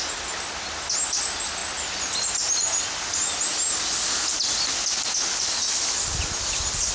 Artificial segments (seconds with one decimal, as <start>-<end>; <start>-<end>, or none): none